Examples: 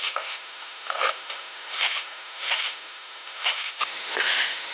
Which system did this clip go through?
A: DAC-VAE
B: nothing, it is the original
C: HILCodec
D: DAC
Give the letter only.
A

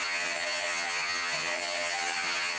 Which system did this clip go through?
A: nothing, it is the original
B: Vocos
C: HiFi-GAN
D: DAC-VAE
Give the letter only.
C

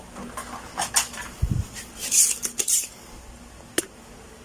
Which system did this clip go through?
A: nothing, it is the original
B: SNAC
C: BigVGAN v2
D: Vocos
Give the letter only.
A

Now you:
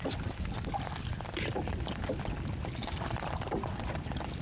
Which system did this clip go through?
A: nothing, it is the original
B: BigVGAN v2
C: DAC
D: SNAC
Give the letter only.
A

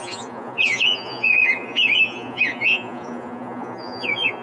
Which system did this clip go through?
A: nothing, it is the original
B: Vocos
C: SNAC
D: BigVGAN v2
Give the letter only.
B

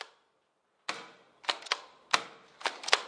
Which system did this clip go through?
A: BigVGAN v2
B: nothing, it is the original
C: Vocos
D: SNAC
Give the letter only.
B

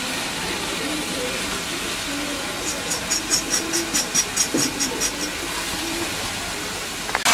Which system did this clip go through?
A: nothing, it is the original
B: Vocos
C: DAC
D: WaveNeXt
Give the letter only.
A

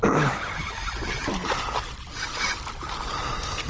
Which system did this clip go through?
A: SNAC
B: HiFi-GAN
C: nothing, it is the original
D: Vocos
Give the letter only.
C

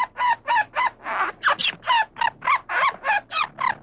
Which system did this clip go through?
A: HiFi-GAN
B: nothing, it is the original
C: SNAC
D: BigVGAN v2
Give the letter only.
B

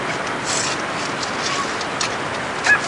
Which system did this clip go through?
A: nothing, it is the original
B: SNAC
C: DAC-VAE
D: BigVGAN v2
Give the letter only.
A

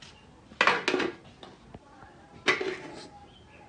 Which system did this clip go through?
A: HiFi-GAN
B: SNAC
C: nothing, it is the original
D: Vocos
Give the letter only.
C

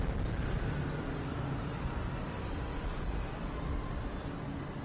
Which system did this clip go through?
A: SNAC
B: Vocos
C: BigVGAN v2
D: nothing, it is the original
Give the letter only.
D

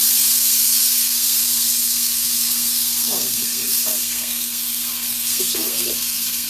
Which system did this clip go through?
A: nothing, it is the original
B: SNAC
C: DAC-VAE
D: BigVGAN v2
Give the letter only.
B